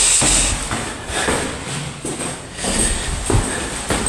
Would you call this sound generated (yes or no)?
no